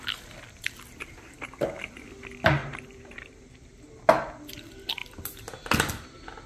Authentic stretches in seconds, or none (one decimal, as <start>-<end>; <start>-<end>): 0.0-2.6; 3.9-6.5